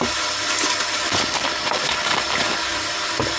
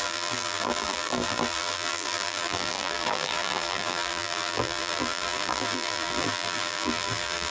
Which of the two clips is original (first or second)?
first